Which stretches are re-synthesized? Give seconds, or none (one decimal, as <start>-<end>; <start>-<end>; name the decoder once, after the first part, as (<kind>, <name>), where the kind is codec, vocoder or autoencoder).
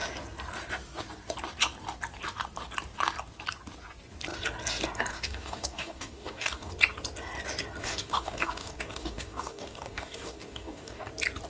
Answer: 5.1-6.7 (codec, DAC); 7.8-11.1